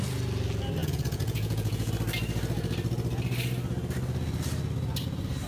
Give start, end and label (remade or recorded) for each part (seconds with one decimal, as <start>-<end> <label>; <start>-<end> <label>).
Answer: 0.0-0.8 recorded; 0.8-1.9 remade; 1.9-5.5 recorded

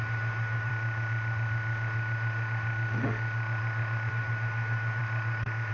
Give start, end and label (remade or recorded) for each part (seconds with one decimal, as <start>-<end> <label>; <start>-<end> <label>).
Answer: 0.0-0.7 recorded; 0.7-4.1 remade; 4.1-5.0 recorded; 5.0-5.7 remade

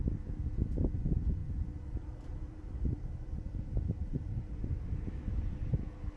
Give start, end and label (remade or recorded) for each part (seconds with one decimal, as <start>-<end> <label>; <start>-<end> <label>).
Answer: 0.0-1.4 recorded; 1.4-5.1 remade; 5.1-6.2 recorded

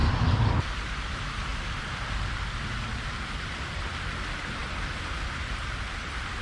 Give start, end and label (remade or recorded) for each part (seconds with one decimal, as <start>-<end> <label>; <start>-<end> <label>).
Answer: 0.0-1.5 remade; 1.5-3.2 recorded; 3.2-6.4 remade

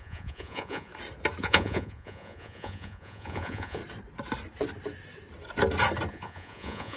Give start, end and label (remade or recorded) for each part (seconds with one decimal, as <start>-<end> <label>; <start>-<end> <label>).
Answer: 0.0-0.9 remade; 0.9-1.4 recorded; 1.4-3.8 remade; 3.8-6.1 recorded; 6.1-7.0 remade

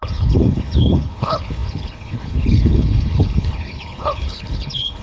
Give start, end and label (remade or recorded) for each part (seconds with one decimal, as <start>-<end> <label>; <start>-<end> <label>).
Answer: 0.0-5.0 remade

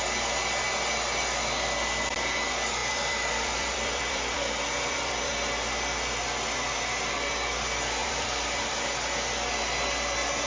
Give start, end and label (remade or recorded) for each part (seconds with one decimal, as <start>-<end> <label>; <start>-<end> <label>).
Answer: 0.0-2.8 recorded; 2.8-5.3 remade; 5.3-8.0 recorded; 8.0-8.7 remade; 8.7-10.5 recorded

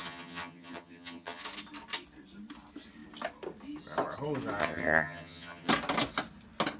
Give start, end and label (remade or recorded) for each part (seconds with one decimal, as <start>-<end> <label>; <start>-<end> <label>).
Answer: 0.0-1.4 remade; 1.4-4.6 recorded; 4.6-5.7 remade; 5.7-6.8 recorded